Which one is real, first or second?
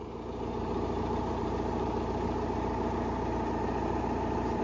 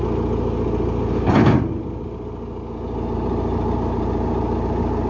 second